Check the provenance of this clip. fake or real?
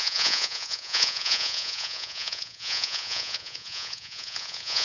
fake